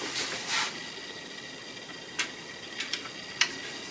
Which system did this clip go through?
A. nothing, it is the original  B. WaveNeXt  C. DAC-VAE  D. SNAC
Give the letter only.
A